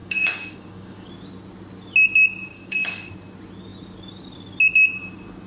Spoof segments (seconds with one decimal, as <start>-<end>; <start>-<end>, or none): 0.0-1.1; 2.5-3.1